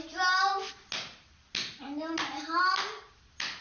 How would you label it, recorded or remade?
recorded